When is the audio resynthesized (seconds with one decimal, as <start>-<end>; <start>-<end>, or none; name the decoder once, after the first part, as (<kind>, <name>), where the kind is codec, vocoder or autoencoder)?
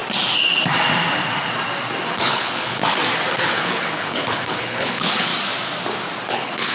2.1-2.8 (codec, HILCodec); 3.4-5.3; 6.3-6.7